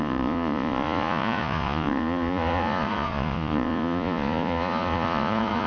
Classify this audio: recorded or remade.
remade